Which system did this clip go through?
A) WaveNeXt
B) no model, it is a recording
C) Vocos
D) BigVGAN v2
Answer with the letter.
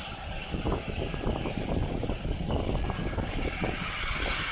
B